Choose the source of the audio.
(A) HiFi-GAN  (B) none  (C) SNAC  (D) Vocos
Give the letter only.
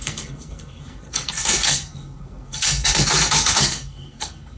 C